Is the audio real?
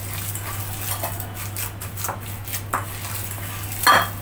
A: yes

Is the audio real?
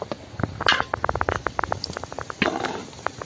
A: yes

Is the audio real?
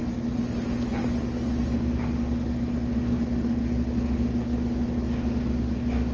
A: yes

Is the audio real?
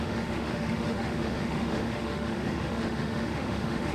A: no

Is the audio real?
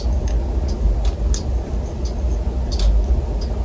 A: yes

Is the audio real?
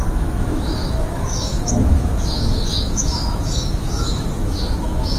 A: no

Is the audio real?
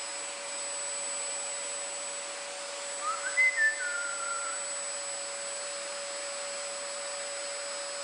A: yes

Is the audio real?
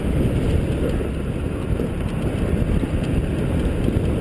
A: yes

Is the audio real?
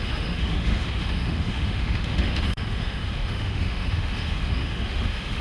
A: no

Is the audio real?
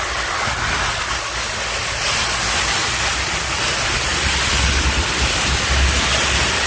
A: yes